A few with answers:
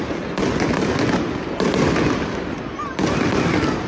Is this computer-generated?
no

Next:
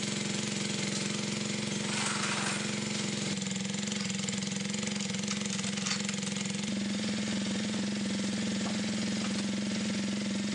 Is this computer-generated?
no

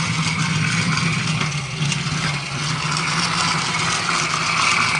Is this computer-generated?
no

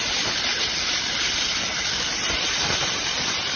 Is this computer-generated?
no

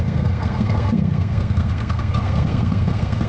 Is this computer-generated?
yes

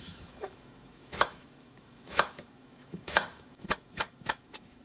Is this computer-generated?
yes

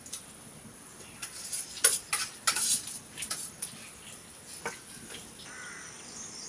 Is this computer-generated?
no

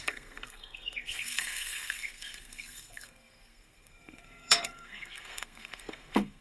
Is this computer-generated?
yes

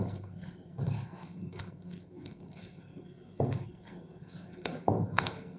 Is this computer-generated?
yes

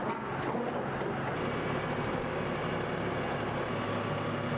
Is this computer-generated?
no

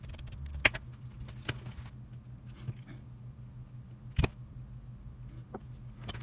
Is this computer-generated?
no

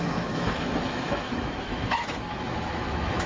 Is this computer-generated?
yes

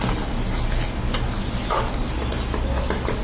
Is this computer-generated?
no